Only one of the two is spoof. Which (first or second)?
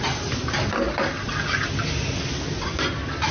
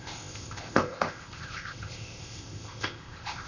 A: second